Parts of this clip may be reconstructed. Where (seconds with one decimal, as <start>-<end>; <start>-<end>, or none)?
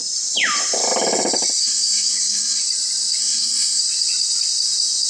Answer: 1.6-2.6; 3.2-3.8